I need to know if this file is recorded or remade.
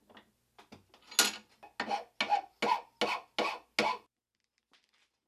recorded